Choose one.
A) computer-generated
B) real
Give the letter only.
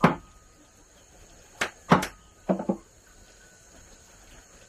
B